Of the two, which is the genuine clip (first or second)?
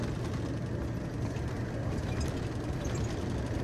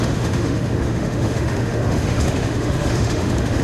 first